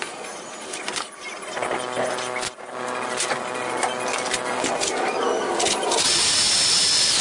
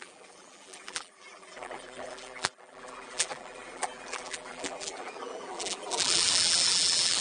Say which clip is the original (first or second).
first